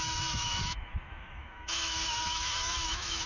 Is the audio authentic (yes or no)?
no